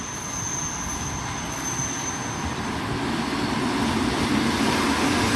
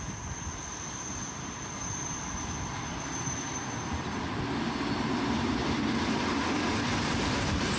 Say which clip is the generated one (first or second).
second